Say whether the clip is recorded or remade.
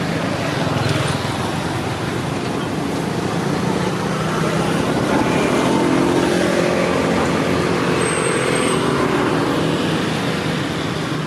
recorded